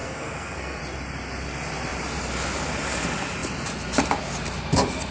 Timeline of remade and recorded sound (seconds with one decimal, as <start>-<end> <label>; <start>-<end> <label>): 0.0-0.8 remade; 0.8-5.1 recorded